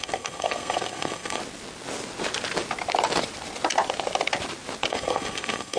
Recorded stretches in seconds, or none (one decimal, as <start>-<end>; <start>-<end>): 1.4-4.9